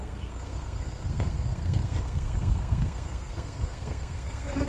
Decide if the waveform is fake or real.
fake